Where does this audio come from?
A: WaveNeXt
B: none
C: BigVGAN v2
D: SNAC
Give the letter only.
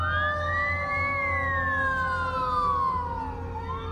B